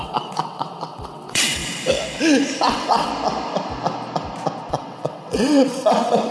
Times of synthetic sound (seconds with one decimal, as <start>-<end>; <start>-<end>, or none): 0.0-1.6; 2.7-3.1; 4.7-6.3

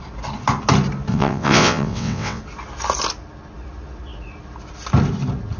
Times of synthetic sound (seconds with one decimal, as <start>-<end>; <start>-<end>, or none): 1.1-2.4

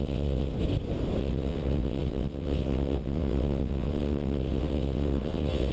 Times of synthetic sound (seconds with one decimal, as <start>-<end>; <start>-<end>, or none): 0.0-0.5; 1.2-5.7

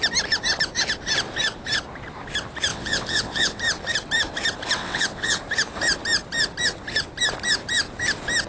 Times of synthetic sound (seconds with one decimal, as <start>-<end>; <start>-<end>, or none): 2.7-3.6; 4.8-5.4